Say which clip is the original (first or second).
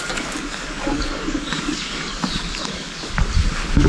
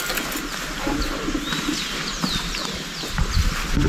second